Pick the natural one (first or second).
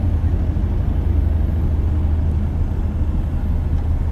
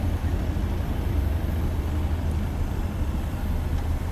first